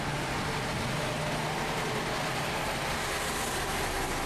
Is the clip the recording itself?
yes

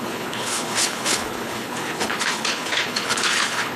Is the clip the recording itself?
no